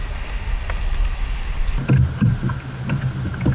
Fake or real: real